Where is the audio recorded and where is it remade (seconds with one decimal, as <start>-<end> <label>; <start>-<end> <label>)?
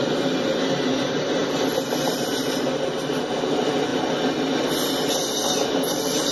0.0-6.3 recorded